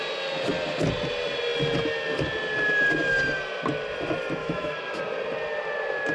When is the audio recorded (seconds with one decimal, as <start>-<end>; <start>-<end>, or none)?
0.0-4.4; 5.0-6.1